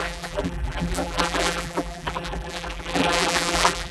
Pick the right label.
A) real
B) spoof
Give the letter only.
B